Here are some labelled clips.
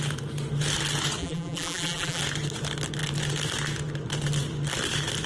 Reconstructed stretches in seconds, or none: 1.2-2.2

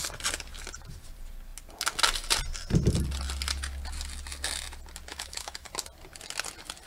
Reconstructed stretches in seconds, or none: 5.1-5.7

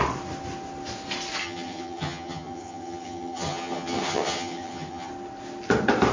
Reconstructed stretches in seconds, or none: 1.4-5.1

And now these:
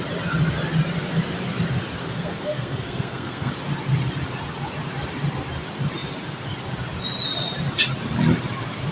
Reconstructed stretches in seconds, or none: 2.0-3.5